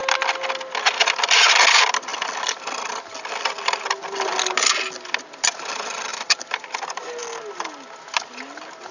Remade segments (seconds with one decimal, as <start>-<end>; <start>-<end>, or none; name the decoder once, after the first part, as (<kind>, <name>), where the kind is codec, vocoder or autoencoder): 6.1-7.2 (vocoder, BigVGAN v2)